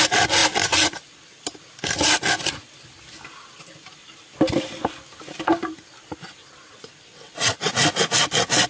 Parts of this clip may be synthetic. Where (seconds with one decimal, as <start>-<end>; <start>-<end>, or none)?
7.1-7.7